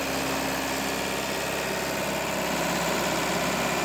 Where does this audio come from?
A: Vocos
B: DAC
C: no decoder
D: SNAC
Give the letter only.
C